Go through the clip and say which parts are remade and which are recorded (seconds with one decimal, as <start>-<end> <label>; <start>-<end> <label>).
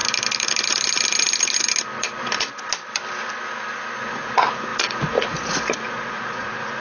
0.0-4.1 recorded; 4.1-6.8 remade